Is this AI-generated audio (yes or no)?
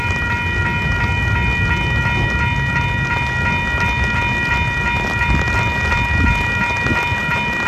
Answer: no